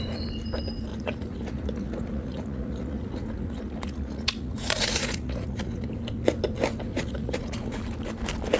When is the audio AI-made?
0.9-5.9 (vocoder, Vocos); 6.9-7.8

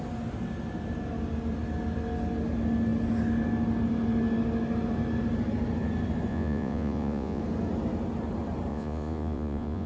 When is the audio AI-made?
6.3-7.4 (vocoder, Vocos); 8.7-9.9